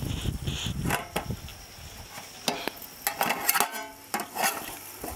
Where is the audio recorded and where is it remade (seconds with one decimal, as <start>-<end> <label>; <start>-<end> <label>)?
0.0-5.2 recorded